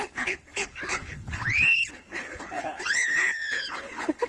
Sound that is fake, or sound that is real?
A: fake